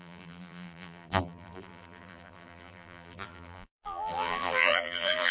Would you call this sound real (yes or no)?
no